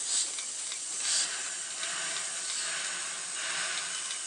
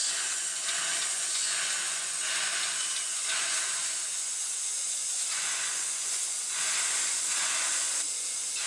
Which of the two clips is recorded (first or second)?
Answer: first